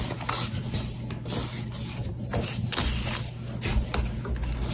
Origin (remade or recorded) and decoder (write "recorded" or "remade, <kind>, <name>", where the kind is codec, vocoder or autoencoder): recorded